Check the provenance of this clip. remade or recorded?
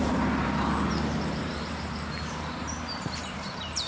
remade